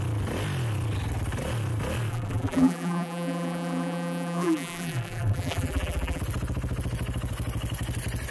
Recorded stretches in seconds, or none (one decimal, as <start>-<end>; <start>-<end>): 0.0-2.1; 6.2-8.3